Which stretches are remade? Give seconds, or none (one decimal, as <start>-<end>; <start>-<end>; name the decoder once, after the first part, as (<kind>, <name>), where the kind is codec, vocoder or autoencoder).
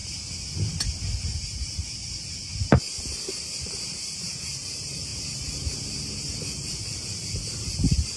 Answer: 1.2-8.2 (vocoder, BigVGAN v2)